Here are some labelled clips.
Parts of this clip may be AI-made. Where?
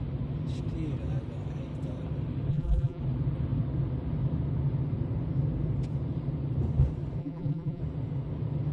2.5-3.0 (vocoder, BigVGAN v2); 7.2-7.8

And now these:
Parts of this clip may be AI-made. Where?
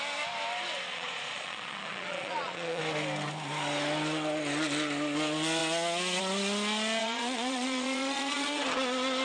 0.9-2.8 (vocoder, Vocos); 7.0-8.6